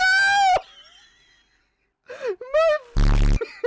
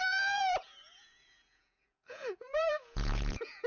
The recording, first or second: first